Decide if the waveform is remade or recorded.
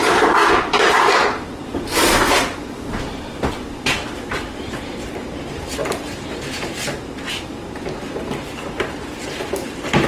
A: remade